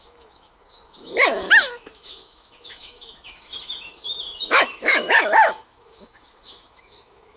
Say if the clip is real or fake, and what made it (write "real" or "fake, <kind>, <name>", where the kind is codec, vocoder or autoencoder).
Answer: fake, autoencoder, DAC-VAE